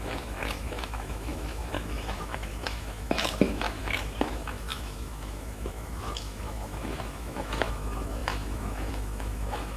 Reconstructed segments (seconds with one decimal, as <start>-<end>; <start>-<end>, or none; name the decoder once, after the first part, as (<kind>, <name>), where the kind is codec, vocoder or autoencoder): 0.0-9.8 (autoencoder, DAC-VAE)